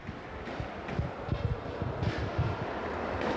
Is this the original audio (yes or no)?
yes